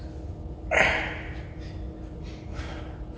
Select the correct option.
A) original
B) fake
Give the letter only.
A